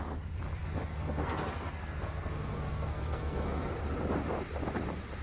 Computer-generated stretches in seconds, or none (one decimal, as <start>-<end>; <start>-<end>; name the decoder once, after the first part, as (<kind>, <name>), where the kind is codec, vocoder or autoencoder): 0.6-3.7 (codec, SNAC)